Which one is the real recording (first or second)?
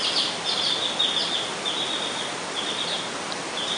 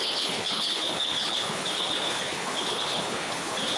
first